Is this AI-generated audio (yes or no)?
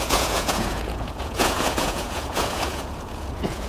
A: yes